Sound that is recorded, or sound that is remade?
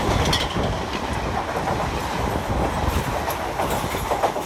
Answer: recorded